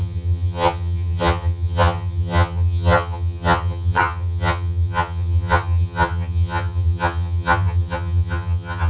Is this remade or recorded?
remade